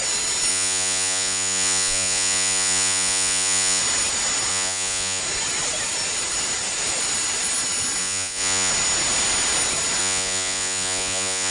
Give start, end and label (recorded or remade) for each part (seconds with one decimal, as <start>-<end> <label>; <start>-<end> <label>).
0.0-0.5 recorded; 0.5-3.8 remade; 3.8-4.5 recorded; 4.5-5.2 remade; 5.2-8.0 recorded; 8.0-8.7 remade; 8.7-10.0 recorded; 10.0-11.5 remade